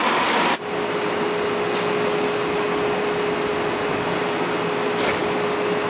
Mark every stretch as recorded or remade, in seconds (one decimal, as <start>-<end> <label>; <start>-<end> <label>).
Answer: 0.0-5.9 recorded